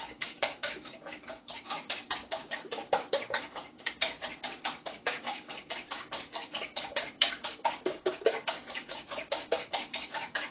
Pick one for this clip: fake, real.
fake